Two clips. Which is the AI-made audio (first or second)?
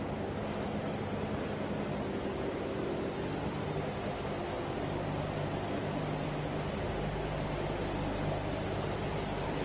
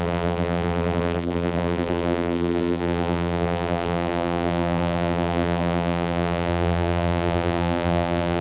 second